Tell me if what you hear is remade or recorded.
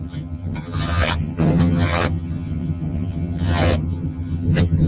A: remade